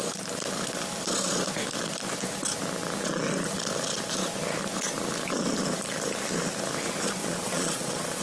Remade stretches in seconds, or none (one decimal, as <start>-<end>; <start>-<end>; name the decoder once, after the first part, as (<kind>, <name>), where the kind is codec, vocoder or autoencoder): 7.2-8.2 (vocoder, Vocos)